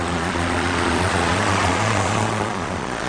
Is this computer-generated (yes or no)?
yes